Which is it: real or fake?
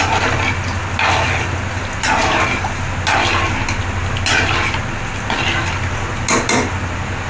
real